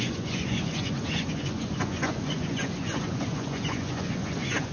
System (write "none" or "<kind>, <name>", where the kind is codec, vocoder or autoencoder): vocoder, Vocos